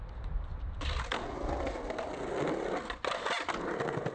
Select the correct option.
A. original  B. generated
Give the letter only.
A